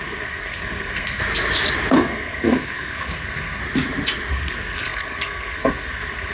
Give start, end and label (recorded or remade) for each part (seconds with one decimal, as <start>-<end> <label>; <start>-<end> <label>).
0.0-1.2 remade; 1.2-1.9 recorded; 1.9-3.6 remade; 3.6-4.3 recorded; 4.3-6.3 remade

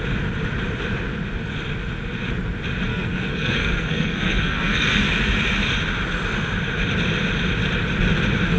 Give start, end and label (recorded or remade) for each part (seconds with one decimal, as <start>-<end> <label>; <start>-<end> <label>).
0.0-2.9 recorded; 2.9-5.0 remade; 5.0-8.6 recorded